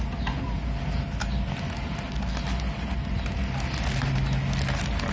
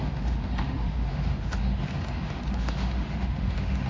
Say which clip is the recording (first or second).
first